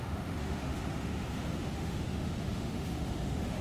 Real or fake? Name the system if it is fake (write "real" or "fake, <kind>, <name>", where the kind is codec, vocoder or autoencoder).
fake, autoencoder, DAC-VAE